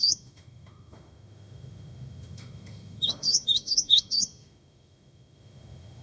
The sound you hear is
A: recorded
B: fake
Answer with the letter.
B